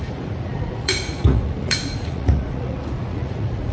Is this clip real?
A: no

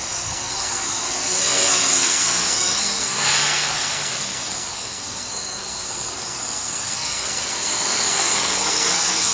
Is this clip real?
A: no